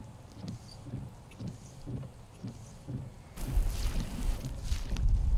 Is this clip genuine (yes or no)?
yes